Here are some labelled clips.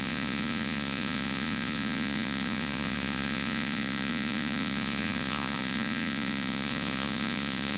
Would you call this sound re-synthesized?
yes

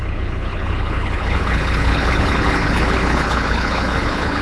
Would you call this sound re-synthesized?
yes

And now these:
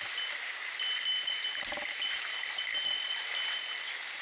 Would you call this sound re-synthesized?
no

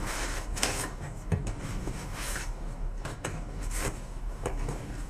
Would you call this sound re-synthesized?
yes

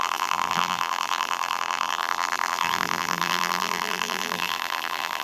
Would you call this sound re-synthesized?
yes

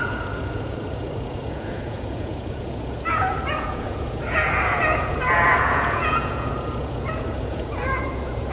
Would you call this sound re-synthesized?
yes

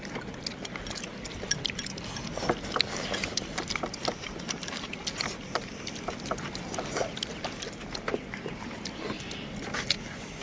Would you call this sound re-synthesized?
no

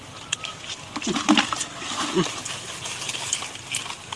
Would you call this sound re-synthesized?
no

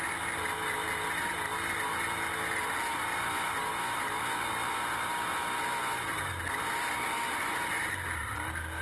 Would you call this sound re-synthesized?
no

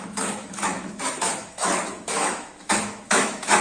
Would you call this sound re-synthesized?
yes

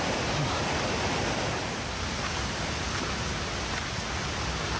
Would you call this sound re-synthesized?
no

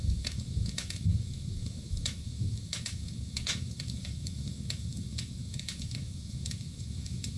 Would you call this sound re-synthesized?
yes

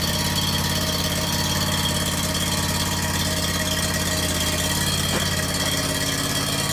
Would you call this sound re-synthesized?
no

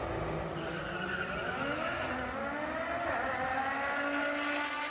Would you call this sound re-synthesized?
no